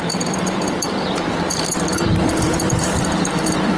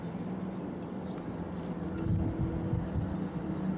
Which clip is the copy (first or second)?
first